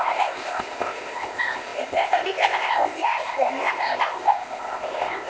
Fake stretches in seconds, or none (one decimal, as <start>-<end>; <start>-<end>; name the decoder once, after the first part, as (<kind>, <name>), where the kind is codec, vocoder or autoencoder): 0.0-5.3 (codec, ZipCodec)